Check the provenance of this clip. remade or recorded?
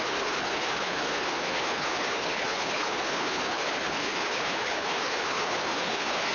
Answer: remade